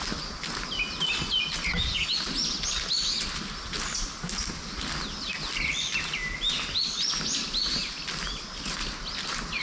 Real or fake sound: real